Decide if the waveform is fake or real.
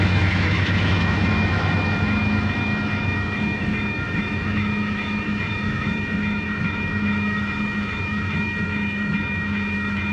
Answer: fake